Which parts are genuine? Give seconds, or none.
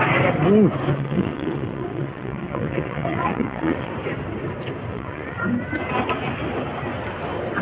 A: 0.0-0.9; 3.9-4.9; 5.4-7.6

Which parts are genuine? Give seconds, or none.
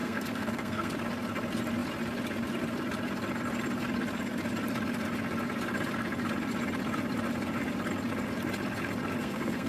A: 0.9-9.2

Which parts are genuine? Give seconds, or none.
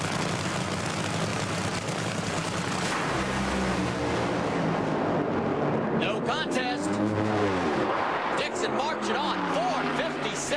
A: 0.0-1.3; 3.3-5.5; 8.4-10.6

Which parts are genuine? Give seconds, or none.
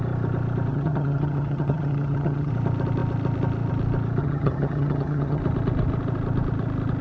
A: 0.0-0.7; 2.5-4.2; 5.4-7.0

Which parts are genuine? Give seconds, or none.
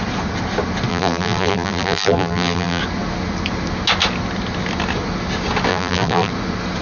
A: 0.0-0.9; 2.8-5.7; 6.3-6.8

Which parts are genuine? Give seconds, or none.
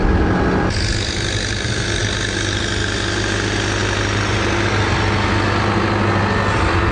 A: 0.0-6.9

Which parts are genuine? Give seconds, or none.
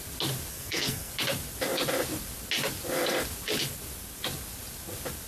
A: 0.0-0.5; 1.1-5.3